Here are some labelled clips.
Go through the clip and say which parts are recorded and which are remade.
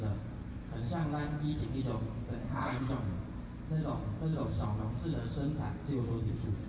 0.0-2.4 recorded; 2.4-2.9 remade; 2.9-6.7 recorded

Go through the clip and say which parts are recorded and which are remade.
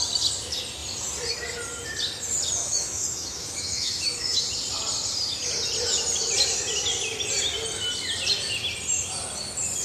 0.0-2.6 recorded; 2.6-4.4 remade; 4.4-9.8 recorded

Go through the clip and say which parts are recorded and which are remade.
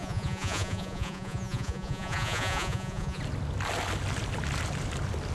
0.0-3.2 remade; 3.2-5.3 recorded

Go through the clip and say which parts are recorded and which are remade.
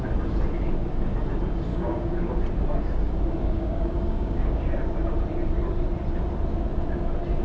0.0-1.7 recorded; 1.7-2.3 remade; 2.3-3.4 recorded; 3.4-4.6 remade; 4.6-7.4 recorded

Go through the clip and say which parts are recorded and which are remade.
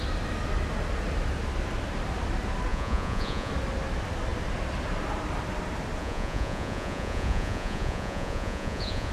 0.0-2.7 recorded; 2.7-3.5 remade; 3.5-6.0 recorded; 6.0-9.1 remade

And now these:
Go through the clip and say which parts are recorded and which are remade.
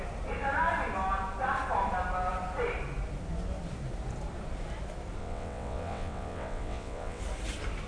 0.0-5.2 recorded; 5.2-7.2 remade; 7.2-7.9 recorded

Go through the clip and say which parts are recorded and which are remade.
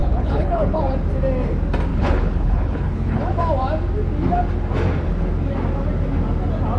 0.0-0.8 remade; 0.8-1.9 recorded; 1.9-3.3 remade; 3.3-6.8 recorded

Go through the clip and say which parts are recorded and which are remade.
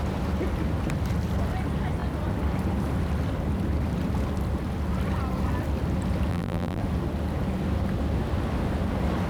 0.0-6.3 recorded; 6.3-6.8 remade; 6.8-9.3 recorded